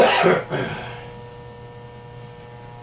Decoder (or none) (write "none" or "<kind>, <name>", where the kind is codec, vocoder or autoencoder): none